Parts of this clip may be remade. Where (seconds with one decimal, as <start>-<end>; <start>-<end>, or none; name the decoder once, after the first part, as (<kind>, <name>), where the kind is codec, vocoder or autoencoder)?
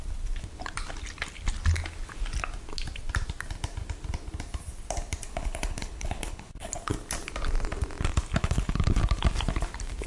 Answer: 5.3-6.7 (codec, HILCodec); 8.4-9.0